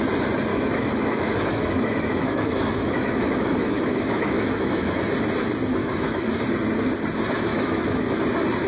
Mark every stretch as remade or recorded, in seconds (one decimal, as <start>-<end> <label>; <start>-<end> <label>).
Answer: 0.0-0.5 recorded; 0.5-5.0 remade; 5.0-5.8 recorded; 5.8-6.4 remade; 6.4-7.5 recorded; 7.5-8.2 remade; 8.2-8.7 recorded